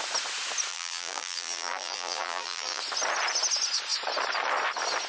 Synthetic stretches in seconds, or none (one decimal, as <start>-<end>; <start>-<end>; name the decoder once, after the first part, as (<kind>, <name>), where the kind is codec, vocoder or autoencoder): 0.7-2.8 (vocoder, BigVGAN v2)